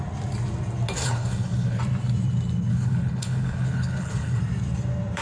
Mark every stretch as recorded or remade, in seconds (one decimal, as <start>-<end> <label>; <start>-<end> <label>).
0.0-1.0 recorded; 1.0-1.8 remade; 1.8-2.7 recorded; 2.7-4.4 remade; 4.4-5.2 recorded